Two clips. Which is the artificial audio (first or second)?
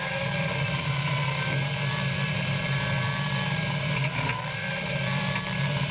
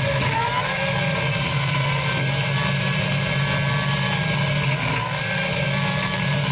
first